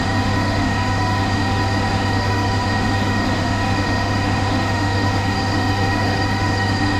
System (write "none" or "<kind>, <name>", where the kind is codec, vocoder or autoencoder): autoencoder, DAC-VAE